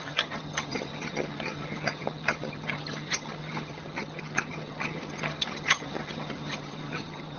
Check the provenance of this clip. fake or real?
fake